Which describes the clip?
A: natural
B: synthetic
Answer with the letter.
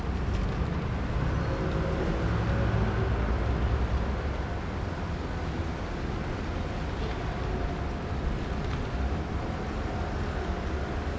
A